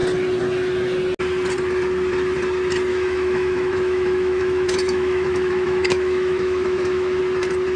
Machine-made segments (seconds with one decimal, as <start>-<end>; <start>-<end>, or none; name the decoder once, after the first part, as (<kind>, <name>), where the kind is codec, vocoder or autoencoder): 2.9-7.2 (autoencoder, DAC-VAE)